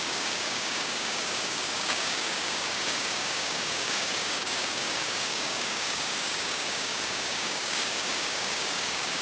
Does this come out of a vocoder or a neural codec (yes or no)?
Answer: yes